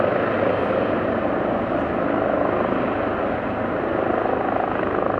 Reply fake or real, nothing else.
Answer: real